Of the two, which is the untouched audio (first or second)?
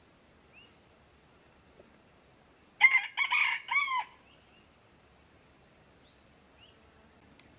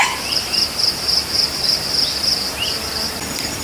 first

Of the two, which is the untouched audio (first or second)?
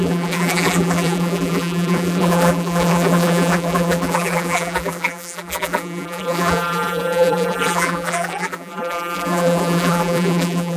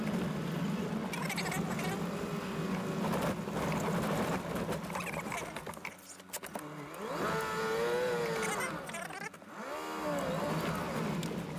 second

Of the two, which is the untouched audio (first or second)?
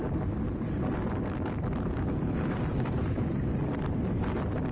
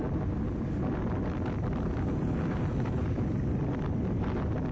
second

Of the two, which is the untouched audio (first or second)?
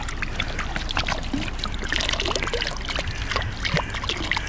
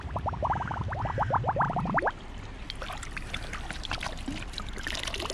first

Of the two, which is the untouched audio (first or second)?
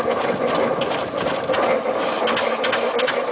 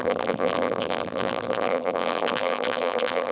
first